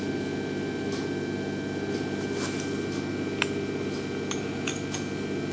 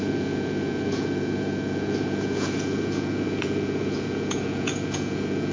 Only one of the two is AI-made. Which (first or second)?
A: second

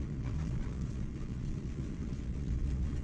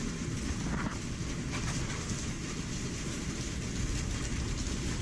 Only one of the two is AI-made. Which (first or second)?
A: first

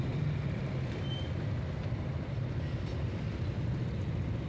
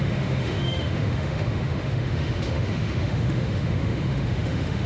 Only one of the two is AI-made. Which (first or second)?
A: second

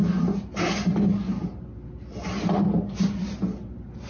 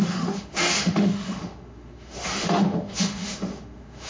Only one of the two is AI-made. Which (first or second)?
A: second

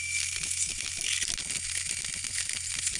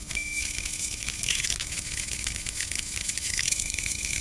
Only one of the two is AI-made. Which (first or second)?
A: second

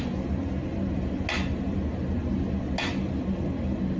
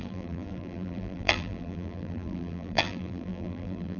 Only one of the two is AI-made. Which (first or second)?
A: second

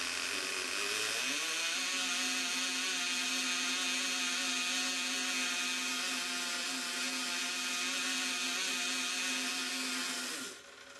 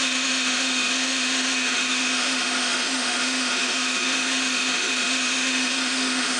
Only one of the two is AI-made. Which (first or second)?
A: second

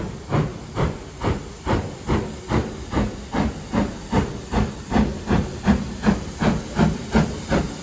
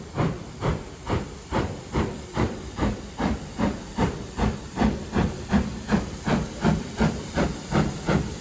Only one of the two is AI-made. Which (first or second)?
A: second